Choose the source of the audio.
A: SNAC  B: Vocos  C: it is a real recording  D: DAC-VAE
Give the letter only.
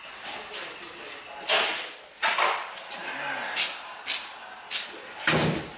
C